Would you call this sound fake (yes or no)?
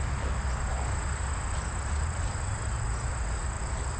no